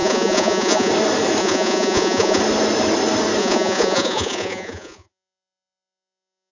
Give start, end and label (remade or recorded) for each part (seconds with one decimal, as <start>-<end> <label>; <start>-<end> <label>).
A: 0.0-0.9 remade; 0.9-1.4 recorded; 1.4-2.4 remade; 2.4-3.4 recorded; 3.4-6.5 remade